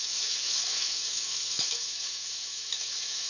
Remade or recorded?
remade